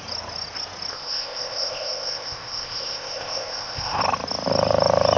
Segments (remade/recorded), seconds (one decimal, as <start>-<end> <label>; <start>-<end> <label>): 0.0-0.9 recorded; 0.9-4.0 remade; 4.0-5.2 recorded